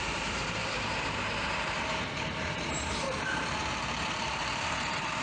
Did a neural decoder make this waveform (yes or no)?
yes